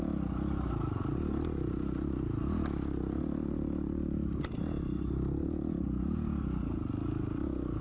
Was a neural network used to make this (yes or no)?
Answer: no